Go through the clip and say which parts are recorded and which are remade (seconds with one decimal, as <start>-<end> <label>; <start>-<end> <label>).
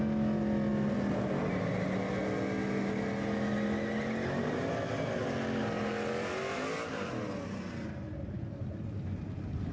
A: 0.0-9.7 recorded